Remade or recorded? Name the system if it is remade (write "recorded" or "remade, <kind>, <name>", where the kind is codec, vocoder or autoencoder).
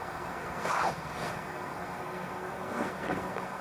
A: remade, codec, SNAC